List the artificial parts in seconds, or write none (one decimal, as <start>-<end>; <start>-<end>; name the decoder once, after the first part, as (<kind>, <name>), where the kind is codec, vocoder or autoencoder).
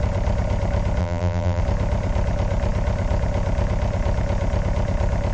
1.0-1.6 (vocoder, BigVGAN v2)